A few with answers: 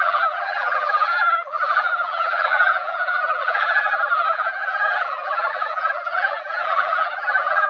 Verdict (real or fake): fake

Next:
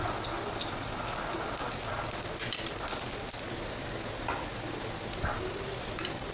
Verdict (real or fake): real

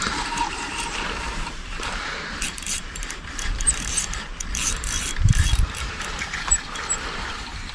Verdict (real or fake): fake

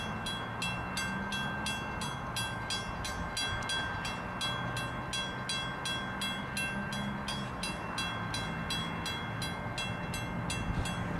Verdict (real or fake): real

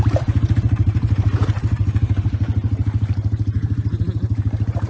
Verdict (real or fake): fake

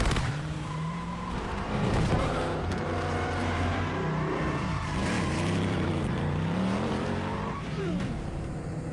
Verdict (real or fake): fake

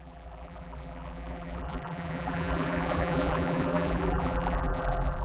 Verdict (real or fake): fake